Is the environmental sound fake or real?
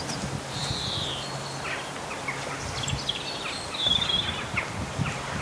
real